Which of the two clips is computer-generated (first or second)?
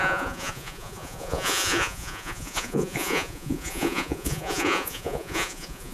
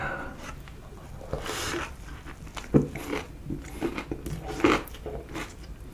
first